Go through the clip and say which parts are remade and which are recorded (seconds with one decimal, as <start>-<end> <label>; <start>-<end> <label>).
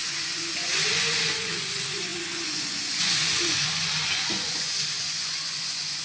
0.0-6.0 remade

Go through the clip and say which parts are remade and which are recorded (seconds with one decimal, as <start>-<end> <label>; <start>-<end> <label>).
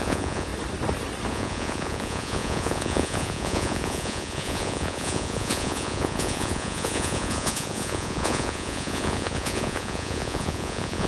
0.0-0.5 remade; 0.5-1.3 recorded; 1.3-11.1 remade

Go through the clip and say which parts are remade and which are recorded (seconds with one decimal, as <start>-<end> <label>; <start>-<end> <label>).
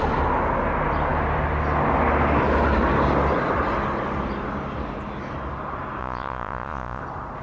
0.0-6.0 recorded; 6.0-7.0 remade; 7.0-7.4 recorded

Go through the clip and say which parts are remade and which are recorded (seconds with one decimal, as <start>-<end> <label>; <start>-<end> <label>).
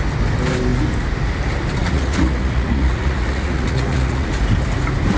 0.0-1.8 recorded; 1.8-4.3 remade; 4.3-5.2 recorded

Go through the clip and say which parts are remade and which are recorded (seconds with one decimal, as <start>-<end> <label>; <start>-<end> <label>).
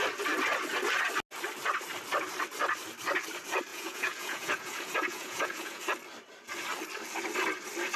0.0-3.7 recorded; 3.7-5.8 remade; 5.8-8.0 recorded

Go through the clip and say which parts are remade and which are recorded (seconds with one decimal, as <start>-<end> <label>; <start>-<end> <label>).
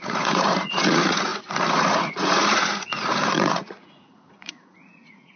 0.0-5.4 remade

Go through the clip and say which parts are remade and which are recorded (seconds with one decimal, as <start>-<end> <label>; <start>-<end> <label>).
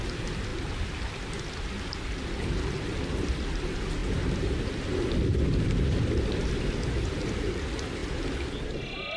0.0-9.2 recorded